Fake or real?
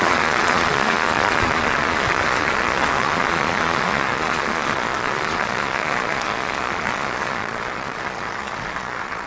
fake